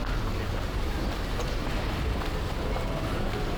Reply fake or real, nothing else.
real